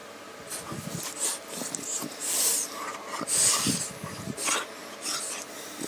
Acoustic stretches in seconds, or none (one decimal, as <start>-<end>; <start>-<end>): 2.9-5.3